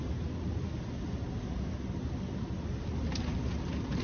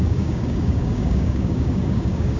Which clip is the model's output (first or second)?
second